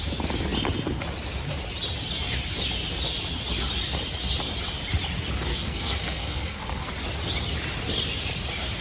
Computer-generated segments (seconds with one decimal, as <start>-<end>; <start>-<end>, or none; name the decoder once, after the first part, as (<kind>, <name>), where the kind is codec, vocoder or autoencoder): 5.5-6.9 (codec, SNAC)